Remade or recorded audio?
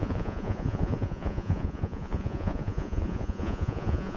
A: remade